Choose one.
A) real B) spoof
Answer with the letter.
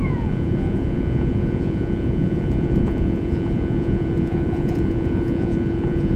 B